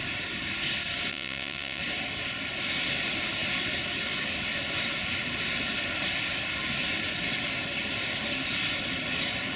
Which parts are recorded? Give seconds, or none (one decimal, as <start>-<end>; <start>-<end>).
0.0-1.1; 1.8-9.6